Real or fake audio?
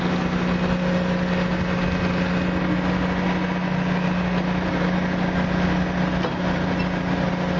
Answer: real